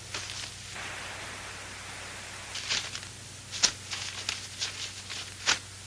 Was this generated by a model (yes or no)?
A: no